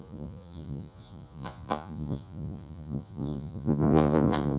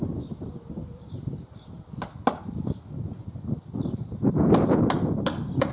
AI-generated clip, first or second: first